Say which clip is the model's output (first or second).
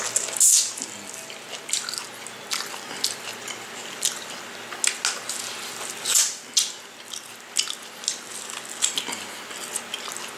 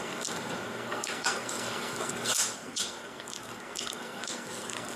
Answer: second